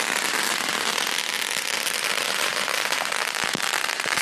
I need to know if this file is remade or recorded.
recorded